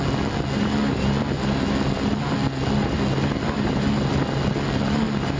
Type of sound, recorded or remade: recorded